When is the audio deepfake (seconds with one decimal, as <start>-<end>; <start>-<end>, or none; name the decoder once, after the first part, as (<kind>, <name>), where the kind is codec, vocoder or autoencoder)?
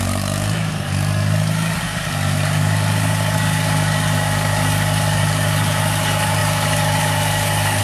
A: 0.0-7.8 (codec, DAC)